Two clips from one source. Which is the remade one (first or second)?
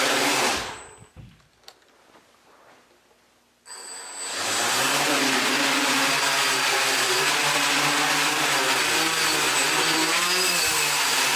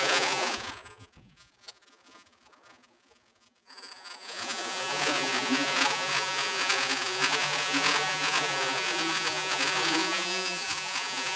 second